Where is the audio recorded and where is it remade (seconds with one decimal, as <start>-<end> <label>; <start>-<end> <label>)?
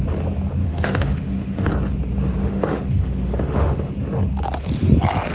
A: 0.0-0.6 recorded; 0.6-1.7 remade; 1.7-2.4 recorded; 2.4-3.9 remade; 3.9-5.3 recorded